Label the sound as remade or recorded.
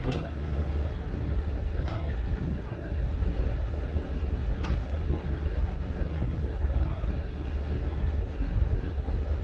remade